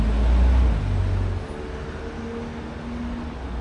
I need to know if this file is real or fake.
real